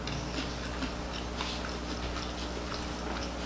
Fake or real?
real